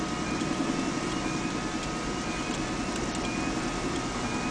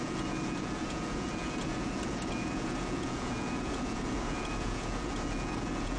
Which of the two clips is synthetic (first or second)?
second